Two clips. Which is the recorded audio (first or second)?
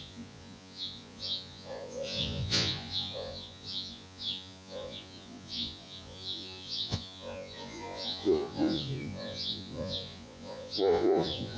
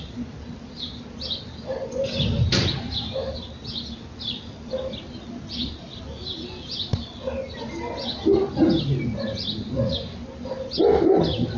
second